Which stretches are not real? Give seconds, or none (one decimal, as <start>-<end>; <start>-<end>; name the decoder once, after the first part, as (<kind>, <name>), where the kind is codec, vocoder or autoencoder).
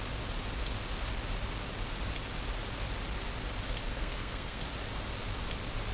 3.9-4.6 (codec, SNAC)